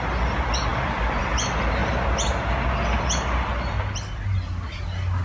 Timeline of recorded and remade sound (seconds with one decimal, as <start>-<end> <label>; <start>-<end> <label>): 0.0-5.2 recorded